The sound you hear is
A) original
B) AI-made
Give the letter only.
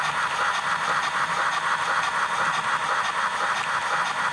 A